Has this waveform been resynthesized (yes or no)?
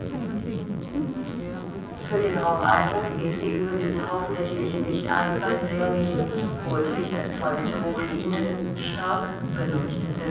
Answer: yes